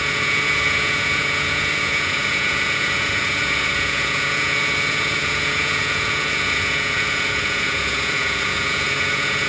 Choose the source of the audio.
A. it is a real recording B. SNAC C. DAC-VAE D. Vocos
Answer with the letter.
D